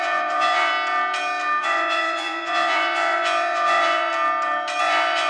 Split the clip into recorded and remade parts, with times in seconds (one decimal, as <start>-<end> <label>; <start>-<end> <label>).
0.0-0.7 remade; 0.7-1.6 recorded; 1.6-4.1 remade; 4.1-4.8 recorded; 4.8-5.3 remade